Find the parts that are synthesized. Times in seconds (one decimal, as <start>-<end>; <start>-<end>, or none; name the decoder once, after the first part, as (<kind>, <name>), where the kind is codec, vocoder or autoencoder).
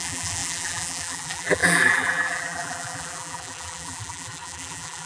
0.0-5.1 (vocoder, BigVGAN v2)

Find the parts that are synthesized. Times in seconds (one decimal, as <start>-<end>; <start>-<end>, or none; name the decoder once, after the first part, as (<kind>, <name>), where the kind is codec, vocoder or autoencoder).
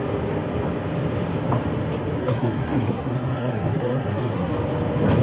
2.2-4.5 (codec, SNAC)